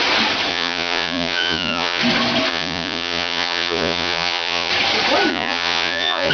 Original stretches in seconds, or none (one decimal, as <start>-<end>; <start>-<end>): 0.0-0.5; 2.0-2.5; 4.7-5.3